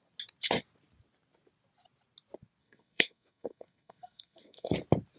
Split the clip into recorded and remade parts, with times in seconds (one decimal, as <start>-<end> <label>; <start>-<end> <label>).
0.0-2.6 recorded; 2.6-4.7 remade; 4.7-5.2 recorded